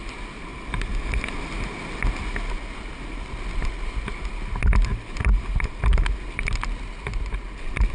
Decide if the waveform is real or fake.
real